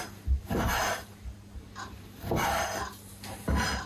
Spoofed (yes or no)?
yes